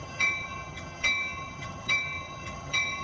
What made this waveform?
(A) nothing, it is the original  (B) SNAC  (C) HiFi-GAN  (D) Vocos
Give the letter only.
C